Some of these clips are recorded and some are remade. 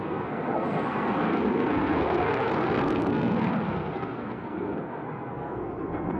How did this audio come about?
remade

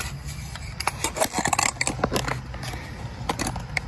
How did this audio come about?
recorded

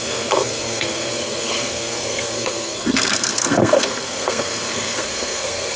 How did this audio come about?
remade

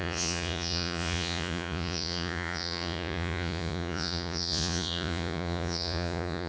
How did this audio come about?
remade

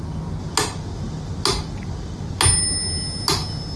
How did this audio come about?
recorded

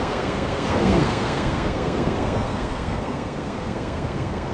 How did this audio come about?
remade